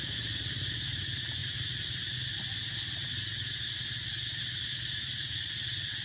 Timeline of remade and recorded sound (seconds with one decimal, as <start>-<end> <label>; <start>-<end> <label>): 0.0-6.0 recorded